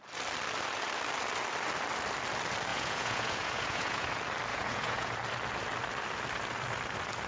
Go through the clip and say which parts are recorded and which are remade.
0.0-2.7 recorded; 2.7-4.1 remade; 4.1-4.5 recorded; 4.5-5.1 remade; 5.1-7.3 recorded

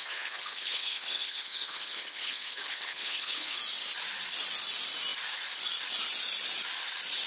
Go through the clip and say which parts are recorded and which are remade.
0.0-3.6 remade; 3.6-7.3 recorded

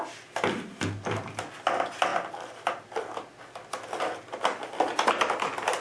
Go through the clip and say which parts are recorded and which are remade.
0.0-5.8 recorded

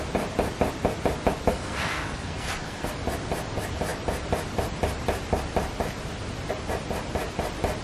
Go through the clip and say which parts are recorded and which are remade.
0.0-1.5 recorded; 1.5-2.9 remade; 2.9-7.8 recorded